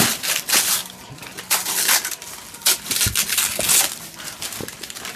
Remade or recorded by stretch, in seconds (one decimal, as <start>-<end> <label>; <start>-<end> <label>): 0.0-5.2 recorded